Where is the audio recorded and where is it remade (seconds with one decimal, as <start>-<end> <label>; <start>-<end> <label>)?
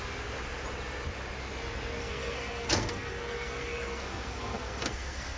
0.0-2.0 recorded; 2.0-5.4 remade